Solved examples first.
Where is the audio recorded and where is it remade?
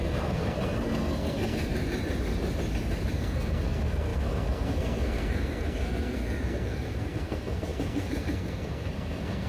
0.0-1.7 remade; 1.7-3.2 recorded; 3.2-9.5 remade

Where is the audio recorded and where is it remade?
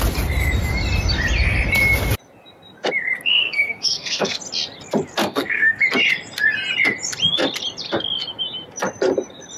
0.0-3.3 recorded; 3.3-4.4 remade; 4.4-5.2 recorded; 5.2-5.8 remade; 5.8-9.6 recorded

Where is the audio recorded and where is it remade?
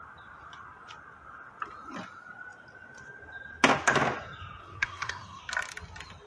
0.0-4.6 recorded; 4.6-5.4 remade; 5.4-6.3 recorded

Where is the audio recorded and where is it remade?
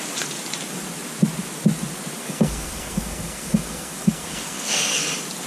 0.0-2.2 recorded; 2.2-5.0 remade; 5.0-5.5 recorded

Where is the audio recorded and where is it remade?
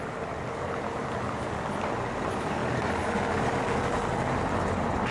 0.0-5.1 recorded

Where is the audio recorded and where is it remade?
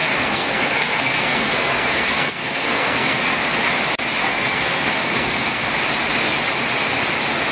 0.0-3.4 remade; 3.4-4.2 recorded; 4.2-5.7 remade; 5.7-7.5 recorded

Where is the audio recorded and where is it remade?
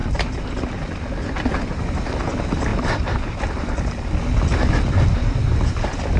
0.0-6.2 recorded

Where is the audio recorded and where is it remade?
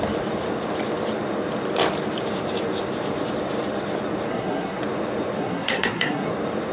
0.0-4.3 recorded; 4.3-4.8 remade; 4.8-5.4 recorded; 5.4-6.3 remade; 6.3-6.7 recorded